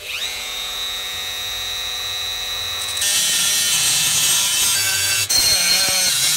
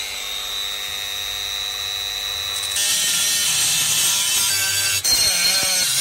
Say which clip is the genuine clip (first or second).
second